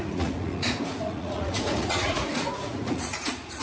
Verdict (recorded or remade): remade